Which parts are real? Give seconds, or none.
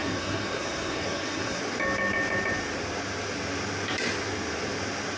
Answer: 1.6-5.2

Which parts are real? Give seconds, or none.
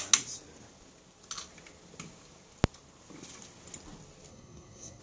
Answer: 0.0-4.3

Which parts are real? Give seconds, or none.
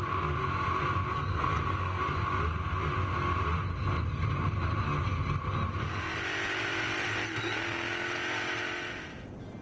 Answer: 0.0-1.1; 2.0-9.6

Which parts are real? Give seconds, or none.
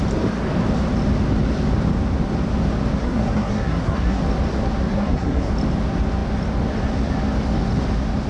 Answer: 0.0-3.0; 4.2-4.9; 5.5-8.3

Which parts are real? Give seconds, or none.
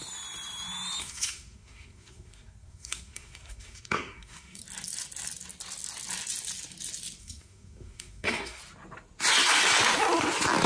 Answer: 0.0-1.0; 4.6-7.2; 8.6-10.7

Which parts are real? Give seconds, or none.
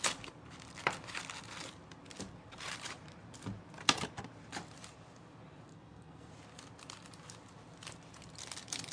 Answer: 0.0-5.7; 6.3-8.9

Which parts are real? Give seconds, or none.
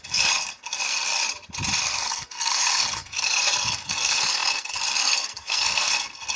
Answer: 1.2-1.8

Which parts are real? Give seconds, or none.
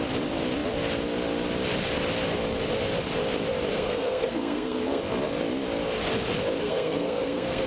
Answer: 0.0-3.7; 5.0-6.6